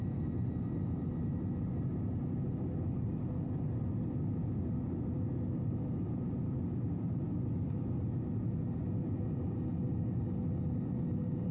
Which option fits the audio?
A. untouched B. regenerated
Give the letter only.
A